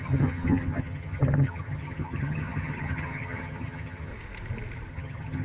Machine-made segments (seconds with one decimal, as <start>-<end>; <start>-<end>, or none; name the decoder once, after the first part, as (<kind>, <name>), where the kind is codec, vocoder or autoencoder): 0.0-4.1 (vocoder, HiFi-GAN); 4.9-5.4